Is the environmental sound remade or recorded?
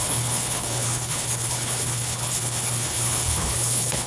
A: remade